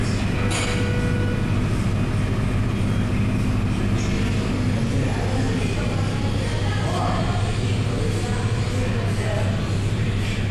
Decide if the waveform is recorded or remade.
recorded